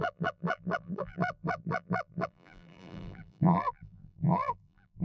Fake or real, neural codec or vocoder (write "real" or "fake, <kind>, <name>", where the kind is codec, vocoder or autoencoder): fake, vocoder, BigVGAN v2